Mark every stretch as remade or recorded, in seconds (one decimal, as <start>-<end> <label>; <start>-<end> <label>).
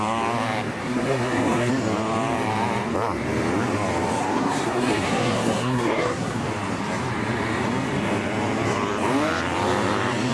0.0-0.8 recorded; 0.8-1.7 remade; 1.7-4.2 recorded; 4.2-6.4 remade; 6.4-10.3 recorded